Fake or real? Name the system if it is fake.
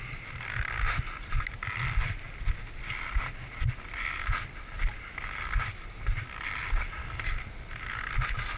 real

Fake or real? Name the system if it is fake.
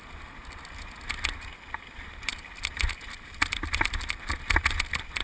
real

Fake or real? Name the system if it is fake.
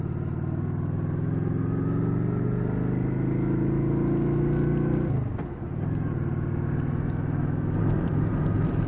real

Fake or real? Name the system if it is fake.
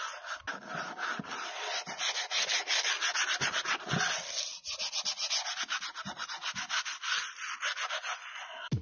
real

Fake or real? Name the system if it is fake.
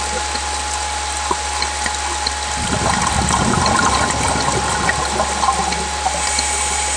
real